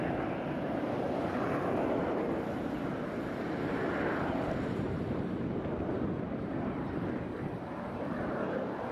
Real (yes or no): no